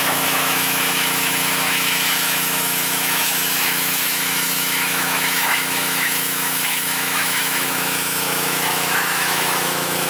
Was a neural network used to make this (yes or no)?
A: yes